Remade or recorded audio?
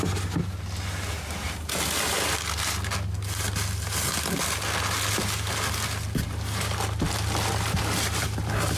recorded